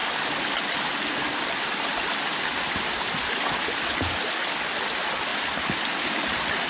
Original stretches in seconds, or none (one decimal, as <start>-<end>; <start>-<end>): 0.0-6.7